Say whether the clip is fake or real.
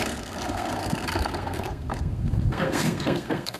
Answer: fake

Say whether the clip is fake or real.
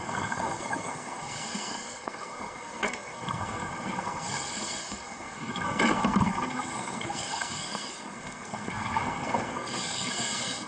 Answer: fake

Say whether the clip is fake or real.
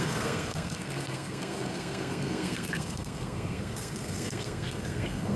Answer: fake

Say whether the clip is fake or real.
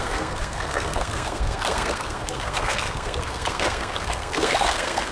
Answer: fake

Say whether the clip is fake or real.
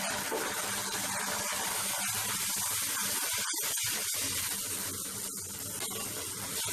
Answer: real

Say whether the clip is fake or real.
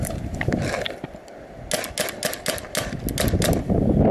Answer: real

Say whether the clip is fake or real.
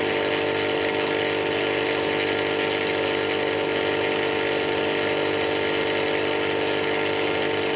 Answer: real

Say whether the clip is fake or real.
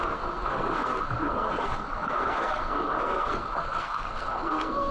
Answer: fake